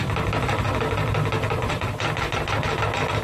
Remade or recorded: recorded